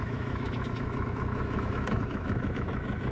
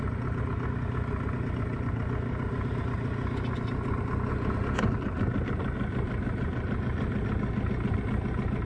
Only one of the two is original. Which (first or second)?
second